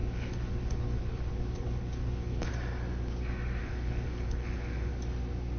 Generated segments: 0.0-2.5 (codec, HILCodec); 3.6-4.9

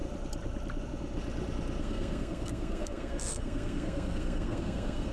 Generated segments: 1.8-5.1 (codec, SNAC)

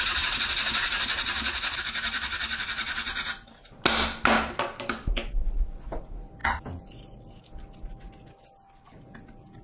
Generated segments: none

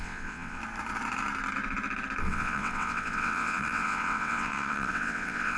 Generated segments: 0.0-0.6 (vocoder, WaveNeXt); 2.2-5.6

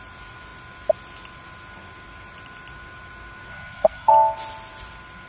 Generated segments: 3.5-4.1 (codec, SNAC)